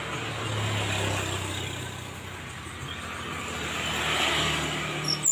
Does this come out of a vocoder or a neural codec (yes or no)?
no